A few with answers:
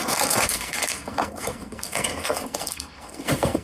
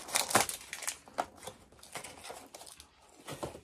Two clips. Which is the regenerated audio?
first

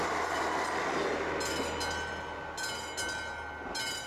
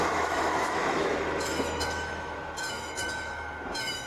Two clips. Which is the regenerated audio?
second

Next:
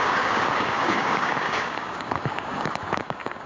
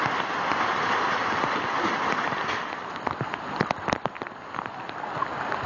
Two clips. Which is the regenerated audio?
first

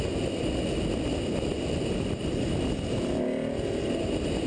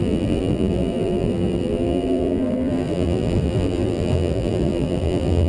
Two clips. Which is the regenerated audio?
second